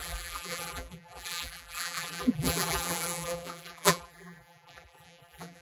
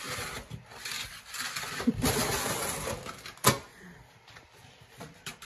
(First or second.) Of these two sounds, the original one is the second